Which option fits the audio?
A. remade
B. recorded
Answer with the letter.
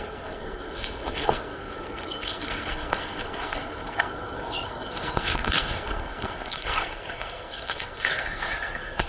A